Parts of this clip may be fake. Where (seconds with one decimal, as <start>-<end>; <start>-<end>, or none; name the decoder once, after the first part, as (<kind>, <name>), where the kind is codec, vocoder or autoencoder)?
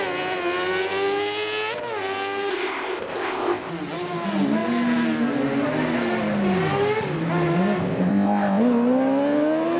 2.5-3.7 (codec, ZipCodec); 7.8-8.6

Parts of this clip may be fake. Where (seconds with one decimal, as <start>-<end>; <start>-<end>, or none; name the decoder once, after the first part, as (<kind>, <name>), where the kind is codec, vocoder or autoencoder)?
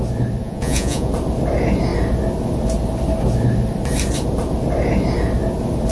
0.4-1.1 (vocoder, Vocos)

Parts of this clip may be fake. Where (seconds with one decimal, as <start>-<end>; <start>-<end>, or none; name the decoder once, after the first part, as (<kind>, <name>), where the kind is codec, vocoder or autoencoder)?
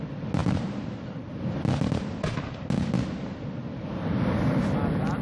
none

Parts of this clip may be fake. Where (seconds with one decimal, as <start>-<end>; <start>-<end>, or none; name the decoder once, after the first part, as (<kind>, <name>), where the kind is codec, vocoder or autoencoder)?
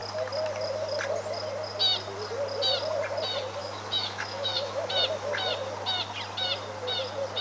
3.6-4.9 (autoencoder, DAC-VAE)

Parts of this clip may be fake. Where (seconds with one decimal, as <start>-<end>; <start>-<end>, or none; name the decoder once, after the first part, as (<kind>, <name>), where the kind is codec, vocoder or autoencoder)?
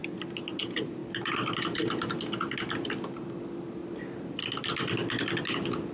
3.8-4.4 (vocoder, BigVGAN v2)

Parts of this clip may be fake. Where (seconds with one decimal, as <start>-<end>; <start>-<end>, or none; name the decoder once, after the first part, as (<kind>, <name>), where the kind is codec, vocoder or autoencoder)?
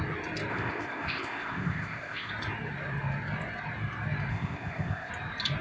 0.5-2.3 (codec, ZipCodec); 4.3-5.1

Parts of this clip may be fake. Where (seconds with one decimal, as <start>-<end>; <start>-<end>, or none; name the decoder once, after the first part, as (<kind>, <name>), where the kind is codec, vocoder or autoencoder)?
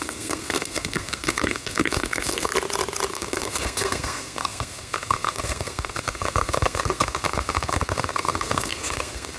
0.0-2.5 (codec, SNAC); 3.1-9.4